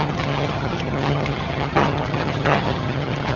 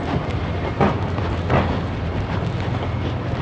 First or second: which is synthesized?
first